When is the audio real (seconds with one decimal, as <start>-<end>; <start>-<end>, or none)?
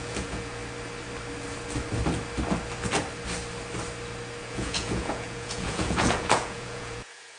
0.6-4.4